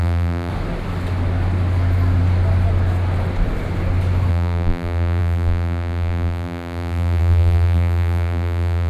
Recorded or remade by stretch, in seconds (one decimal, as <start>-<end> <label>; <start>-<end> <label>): 0.0-0.5 remade; 0.5-4.3 recorded; 4.3-8.9 remade